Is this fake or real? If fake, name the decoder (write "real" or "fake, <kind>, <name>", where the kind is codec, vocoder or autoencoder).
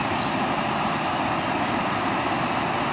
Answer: real